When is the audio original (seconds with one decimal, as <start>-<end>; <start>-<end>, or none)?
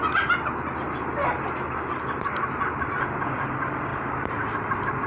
0.0-3.9